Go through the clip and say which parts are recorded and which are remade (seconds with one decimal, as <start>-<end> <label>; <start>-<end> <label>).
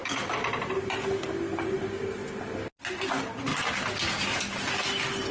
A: 0.0-2.2 remade; 2.2-2.8 recorded; 2.8-5.3 remade